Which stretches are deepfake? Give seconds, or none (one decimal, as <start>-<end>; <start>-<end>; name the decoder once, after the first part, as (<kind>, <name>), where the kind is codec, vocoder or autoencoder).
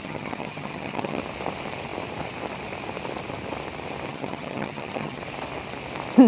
0.0-1.2 (vocoder, HiFi-GAN); 4.1-5.2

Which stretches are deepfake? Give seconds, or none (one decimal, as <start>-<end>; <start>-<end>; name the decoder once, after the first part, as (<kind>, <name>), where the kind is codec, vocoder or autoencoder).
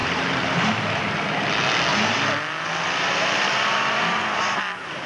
0.0-1.0 (vocoder, BigVGAN v2); 1.9-5.1